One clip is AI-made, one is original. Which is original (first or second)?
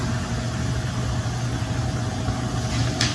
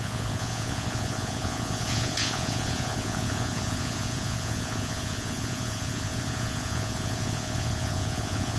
first